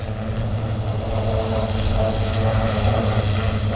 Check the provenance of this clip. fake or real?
real